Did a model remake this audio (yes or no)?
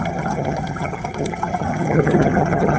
yes